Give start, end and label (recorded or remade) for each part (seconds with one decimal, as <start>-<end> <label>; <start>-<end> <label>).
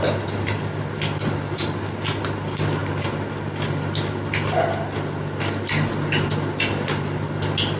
0.0-7.8 recorded